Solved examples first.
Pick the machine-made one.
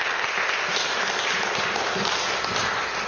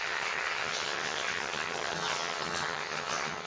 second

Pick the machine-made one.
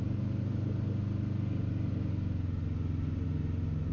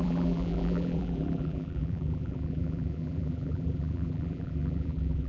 second